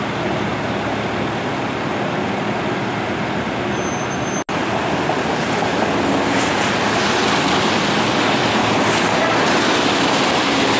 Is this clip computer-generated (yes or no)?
no